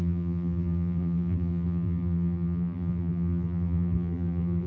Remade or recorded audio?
remade